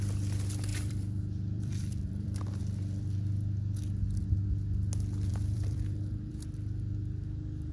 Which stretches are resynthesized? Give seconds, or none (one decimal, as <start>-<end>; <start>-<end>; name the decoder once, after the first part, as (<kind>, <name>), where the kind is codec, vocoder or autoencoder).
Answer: 0.7-2.6 (vocoder, BigVGAN v2); 5.3-6.3